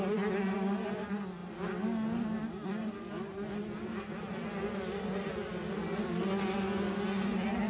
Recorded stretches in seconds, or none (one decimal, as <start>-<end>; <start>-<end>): 0.0-7.7